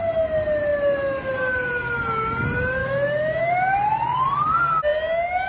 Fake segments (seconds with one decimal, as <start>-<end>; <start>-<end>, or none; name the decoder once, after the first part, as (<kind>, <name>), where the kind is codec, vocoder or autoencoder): 2.8-3.5 (autoencoder, DAC-VAE)